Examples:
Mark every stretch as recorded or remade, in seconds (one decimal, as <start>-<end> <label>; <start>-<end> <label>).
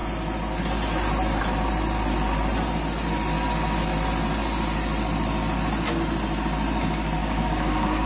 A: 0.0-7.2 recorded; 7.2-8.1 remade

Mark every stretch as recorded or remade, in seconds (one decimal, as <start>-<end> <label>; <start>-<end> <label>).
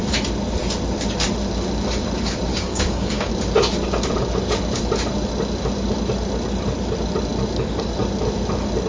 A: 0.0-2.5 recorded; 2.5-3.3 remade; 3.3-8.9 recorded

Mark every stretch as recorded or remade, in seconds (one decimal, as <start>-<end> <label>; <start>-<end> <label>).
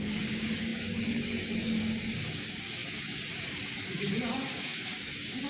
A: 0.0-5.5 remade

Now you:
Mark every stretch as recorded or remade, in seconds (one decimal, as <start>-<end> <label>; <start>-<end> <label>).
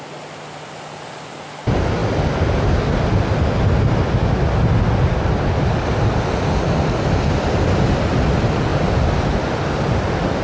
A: 0.0-10.4 recorded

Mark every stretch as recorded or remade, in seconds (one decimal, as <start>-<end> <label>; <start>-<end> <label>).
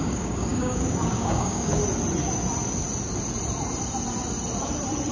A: 0.0-1.8 remade; 1.8-5.1 recorded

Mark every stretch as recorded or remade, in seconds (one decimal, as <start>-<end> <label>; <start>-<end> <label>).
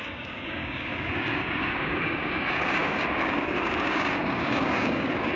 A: 0.0-5.4 remade